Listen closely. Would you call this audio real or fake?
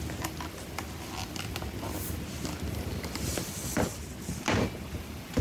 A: real